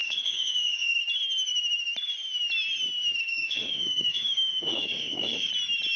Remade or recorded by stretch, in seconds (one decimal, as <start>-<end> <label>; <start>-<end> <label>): 0.0-1.0 remade; 1.0-3.3 recorded; 3.3-5.5 remade; 5.5-6.0 recorded